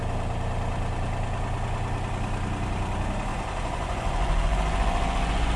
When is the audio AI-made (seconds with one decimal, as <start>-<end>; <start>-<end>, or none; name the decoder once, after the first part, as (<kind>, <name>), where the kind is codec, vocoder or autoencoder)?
3.3-5.6 (vocoder, Vocos)